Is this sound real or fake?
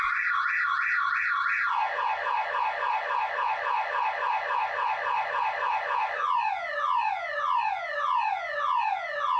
real